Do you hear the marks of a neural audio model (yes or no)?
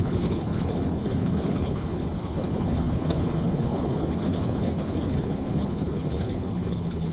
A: yes